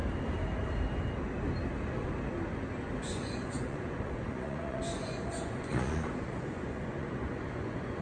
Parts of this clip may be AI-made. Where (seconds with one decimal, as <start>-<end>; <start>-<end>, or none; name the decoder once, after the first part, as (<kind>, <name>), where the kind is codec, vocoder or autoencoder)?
3.0-8.0 (vocoder, Vocos)